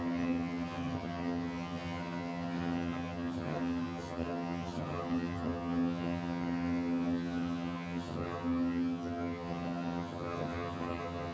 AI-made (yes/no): yes